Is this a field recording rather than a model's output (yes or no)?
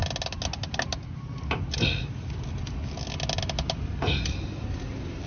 yes